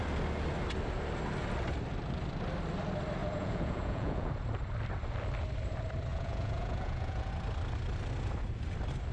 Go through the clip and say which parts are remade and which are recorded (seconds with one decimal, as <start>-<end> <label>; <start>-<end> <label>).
0.0-3.2 recorded; 3.2-4.3 remade; 4.3-6.1 recorded; 6.1-7.3 remade; 7.3-9.1 recorded